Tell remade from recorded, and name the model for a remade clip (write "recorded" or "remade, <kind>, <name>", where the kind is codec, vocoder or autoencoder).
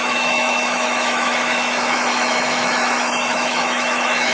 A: remade, autoencoder, DAC-VAE